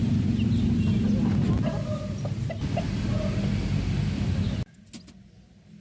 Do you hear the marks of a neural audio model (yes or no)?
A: no